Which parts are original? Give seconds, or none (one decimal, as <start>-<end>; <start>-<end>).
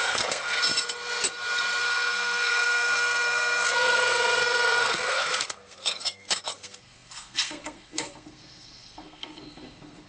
0.6-1.8